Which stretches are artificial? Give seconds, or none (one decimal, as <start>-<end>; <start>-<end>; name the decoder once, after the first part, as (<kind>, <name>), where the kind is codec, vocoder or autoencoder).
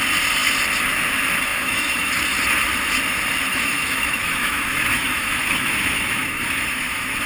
1.5-2.1 (autoencoder, DAC-VAE); 3.5-7.3